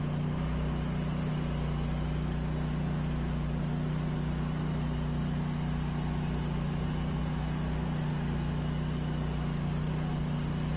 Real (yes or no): yes